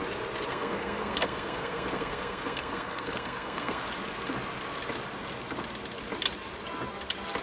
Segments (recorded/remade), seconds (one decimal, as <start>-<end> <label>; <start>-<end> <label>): 0.0-0.5 recorded; 0.5-3.8 remade; 3.8-7.4 recorded